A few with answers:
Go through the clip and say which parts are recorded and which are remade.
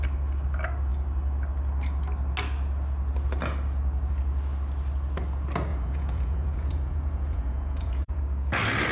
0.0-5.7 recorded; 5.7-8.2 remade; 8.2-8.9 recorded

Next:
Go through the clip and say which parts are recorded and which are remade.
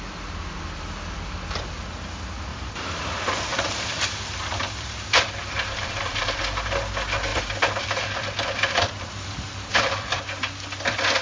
0.0-2.5 recorded; 2.5-3.0 remade; 3.0-3.5 recorded; 3.5-6.4 remade; 6.4-7.3 recorded; 7.3-10.5 remade; 10.5-11.2 recorded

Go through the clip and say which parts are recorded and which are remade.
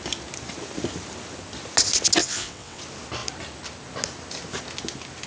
0.0-2.2 recorded; 2.2-2.8 remade; 2.8-5.3 recorded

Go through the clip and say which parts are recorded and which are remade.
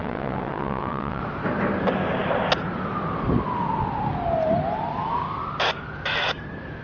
0.0-1.2 remade; 1.2-6.8 recorded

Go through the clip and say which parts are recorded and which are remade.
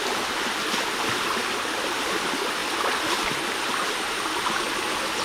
0.0-5.2 recorded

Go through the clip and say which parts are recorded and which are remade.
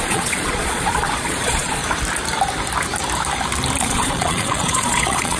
0.0-1.8 remade; 1.8-3.8 recorded; 3.8-5.4 remade